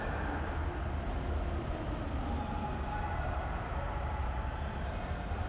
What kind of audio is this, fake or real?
real